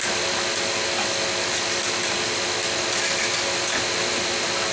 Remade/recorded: recorded